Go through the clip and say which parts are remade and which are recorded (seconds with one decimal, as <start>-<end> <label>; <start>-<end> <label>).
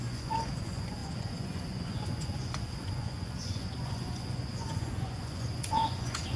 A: 0.0-6.4 remade